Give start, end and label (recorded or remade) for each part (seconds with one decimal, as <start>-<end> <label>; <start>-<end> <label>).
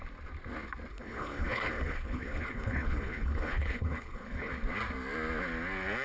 0.0-0.9 recorded; 0.9-4.5 remade; 4.5-6.0 recorded